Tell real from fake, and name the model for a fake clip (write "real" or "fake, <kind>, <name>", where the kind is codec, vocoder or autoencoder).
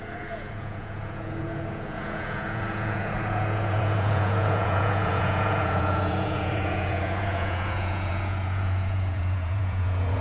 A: fake, vocoder, Vocos